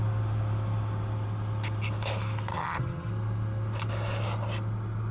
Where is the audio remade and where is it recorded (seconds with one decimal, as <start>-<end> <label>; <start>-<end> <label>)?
0.0-2.5 recorded; 2.5-3.1 remade; 3.1-5.1 recorded